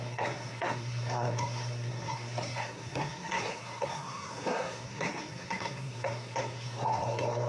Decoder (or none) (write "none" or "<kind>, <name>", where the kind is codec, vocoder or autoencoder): codec, SNAC